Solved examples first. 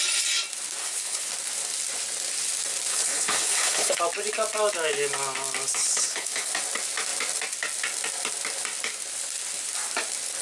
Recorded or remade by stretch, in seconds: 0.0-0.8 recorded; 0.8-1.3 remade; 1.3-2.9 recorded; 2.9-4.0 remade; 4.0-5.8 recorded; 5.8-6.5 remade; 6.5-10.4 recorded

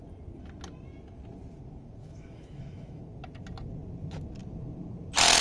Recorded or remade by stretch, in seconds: 0.0-2.0 recorded; 2.0-3.0 remade; 3.0-5.4 recorded

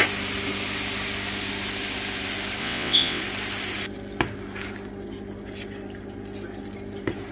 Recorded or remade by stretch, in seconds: 0.0-2.6 recorded; 2.6-3.2 remade; 3.2-7.3 recorded

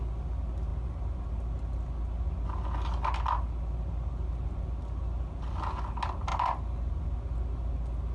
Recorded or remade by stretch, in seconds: 0.0-8.1 recorded